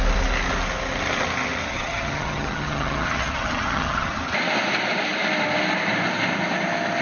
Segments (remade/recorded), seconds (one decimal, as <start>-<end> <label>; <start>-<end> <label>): 0.0-1.7 recorded; 1.7-4.2 remade; 4.2-7.0 recorded